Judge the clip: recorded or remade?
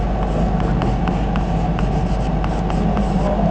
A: recorded